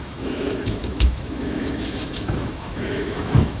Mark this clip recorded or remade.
remade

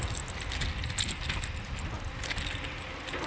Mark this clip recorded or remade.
recorded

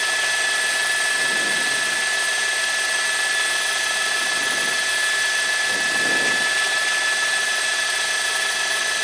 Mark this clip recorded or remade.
recorded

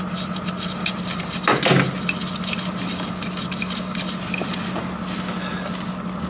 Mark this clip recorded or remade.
recorded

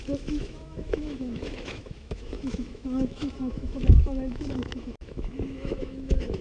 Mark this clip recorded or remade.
remade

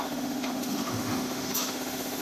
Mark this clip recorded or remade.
remade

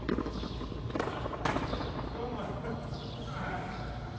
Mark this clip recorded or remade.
recorded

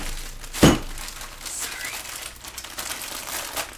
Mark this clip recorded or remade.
recorded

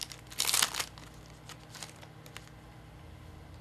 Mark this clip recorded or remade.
recorded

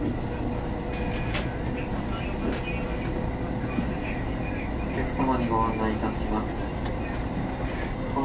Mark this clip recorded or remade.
recorded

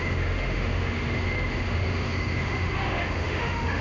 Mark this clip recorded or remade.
remade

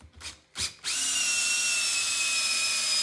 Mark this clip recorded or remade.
recorded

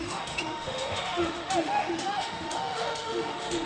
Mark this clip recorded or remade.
remade